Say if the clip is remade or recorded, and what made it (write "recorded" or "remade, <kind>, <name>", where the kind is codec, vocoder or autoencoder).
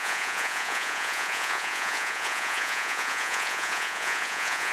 remade, vocoder, Vocos